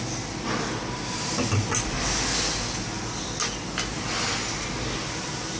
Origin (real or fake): real